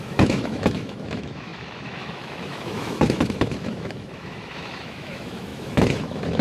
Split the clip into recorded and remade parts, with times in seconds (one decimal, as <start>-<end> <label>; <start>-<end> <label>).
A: 0.0-6.4 remade